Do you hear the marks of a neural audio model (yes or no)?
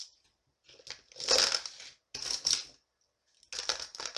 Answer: no